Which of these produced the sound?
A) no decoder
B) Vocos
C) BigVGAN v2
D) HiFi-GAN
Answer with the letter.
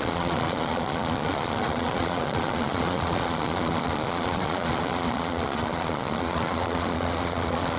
B